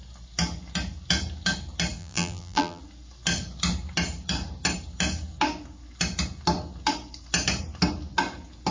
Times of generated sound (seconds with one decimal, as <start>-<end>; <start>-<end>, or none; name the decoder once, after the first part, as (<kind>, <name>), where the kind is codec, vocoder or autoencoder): 2.0-2.8 (vocoder, BigVGAN v2)